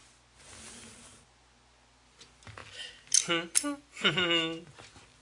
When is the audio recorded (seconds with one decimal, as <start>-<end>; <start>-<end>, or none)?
0.0-5.2